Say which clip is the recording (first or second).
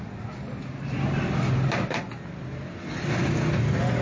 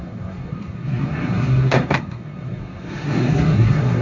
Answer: first